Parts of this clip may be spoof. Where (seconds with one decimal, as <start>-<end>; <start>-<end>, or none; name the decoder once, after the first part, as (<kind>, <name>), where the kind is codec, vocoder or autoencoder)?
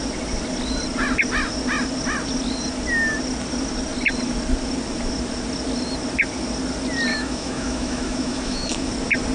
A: 7.1-8.9 (autoencoder, DAC-VAE)